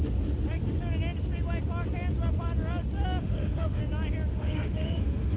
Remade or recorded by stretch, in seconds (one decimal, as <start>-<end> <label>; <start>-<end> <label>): 0.0-3.2 recorded; 3.2-3.8 remade; 3.8-4.3 recorded; 4.3-5.4 remade

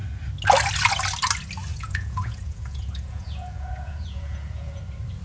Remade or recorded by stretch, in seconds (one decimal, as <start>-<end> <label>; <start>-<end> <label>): 0.0-1.7 recorded; 1.7-4.8 remade; 4.8-5.2 recorded

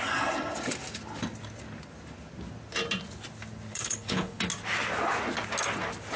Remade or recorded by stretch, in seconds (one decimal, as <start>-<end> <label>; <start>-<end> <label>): 0.0-3.7 recorded; 3.7-4.5 remade; 4.5-6.2 recorded

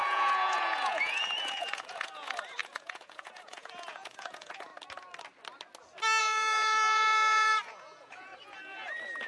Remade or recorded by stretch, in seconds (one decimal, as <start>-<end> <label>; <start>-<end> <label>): 0.0-4.7 remade; 4.7-6.2 recorded; 6.2-9.3 remade